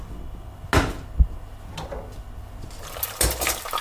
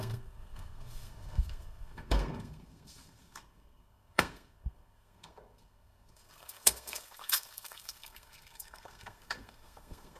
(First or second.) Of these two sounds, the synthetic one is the second